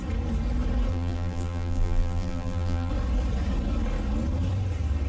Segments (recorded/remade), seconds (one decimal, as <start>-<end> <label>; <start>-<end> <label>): 0.0-0.9 recorded; 0.9-2.9 remade; 2.9-5.1 recorded